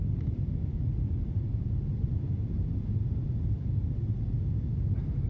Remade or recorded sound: recorded